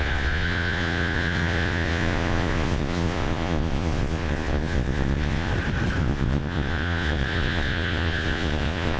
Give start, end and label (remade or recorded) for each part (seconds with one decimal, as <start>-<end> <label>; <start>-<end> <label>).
0.0-5.5 remade; 5.5-6.0 recorded; 6.0-9.0 remade